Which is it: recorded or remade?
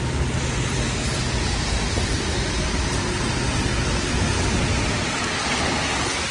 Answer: recorded